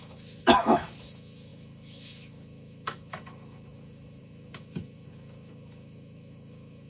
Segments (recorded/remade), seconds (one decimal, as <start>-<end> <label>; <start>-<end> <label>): 0.0-6.9 remade

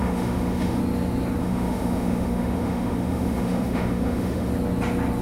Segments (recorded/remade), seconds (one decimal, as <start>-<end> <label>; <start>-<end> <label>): 0.0-0.8 remade; 0.8-1.4 recorded; 1.4-4.5 remade; 4.5-5.2 recorded

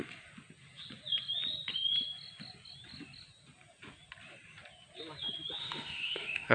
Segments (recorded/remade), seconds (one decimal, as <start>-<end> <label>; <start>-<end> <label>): 0.0-5.6 recorded; 5.6-6.5 remade

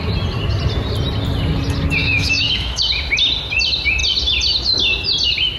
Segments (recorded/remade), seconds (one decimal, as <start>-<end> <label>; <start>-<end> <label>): 0.0-2.0 recorded; 2.0-2.8 remade; 2.8-5.6 recorded

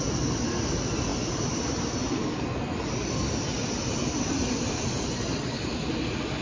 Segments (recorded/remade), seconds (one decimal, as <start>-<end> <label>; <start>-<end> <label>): 0.0-6.4 recorded